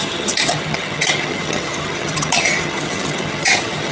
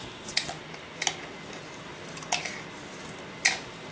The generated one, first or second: first